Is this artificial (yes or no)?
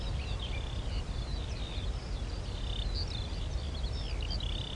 no